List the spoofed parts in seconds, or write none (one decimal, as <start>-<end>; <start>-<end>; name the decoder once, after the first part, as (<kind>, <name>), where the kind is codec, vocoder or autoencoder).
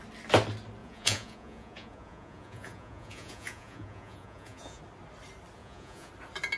0.8-4.8 (vocoder, Vocos); 5.6-6.1